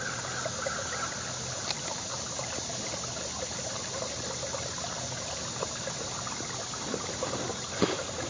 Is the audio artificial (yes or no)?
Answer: no